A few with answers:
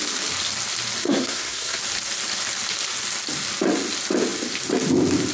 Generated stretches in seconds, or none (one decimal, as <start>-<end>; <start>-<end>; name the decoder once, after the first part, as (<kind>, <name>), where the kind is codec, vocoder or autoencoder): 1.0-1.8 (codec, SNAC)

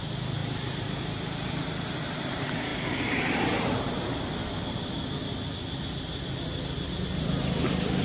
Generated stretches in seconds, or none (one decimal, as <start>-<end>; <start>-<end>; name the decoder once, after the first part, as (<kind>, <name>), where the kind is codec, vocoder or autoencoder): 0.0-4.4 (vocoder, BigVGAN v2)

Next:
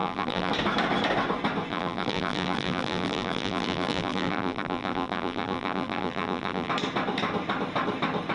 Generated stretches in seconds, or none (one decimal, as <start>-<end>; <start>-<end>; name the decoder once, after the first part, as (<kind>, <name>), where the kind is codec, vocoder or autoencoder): 0.0-0.5 (vocoder, BigVGAN v2); 1.7-6.7

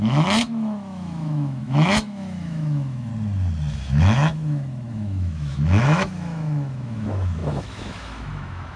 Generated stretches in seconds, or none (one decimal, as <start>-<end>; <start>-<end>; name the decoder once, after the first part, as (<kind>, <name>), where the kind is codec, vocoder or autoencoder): 0.0-3.1 (autoencoder, DAC-VAE); 3.7-8.8

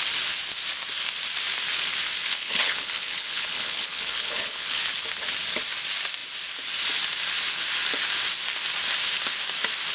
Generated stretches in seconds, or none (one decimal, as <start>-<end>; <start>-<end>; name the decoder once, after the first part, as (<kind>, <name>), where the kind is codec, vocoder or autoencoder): 2.2-4.8 (codec, HILCodec)

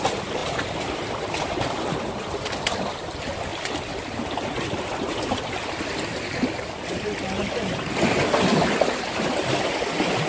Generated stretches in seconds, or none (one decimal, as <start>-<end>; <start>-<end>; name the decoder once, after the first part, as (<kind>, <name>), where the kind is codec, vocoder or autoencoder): none